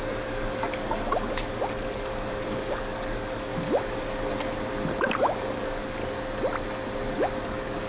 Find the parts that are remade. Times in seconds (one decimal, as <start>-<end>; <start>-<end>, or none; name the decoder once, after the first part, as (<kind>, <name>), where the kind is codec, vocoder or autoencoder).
0.0-3.5 (codec, DAC); 5.0-6.0; 7.1-7.9